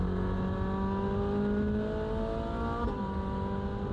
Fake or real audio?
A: real